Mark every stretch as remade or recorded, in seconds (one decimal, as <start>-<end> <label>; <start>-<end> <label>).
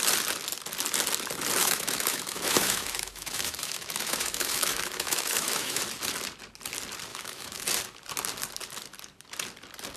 0.0-1.6 recorded; 1.6-5.8 remade; 5.8-7.1 recorded; 7.1-7.6 remade; 7.6-10.0 recorded